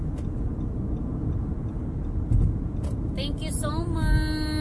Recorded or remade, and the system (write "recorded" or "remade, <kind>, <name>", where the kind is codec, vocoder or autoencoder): recorded